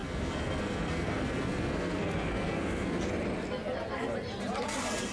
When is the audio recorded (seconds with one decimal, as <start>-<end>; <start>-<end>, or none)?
3.0-5.1